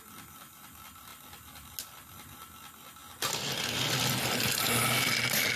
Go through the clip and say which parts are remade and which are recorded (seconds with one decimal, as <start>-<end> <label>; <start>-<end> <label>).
0.0-5.6 recorded